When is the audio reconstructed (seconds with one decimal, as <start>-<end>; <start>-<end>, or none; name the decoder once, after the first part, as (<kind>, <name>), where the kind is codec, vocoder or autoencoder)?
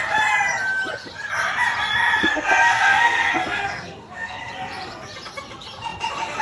2.2-4.5 (codec, SNAC)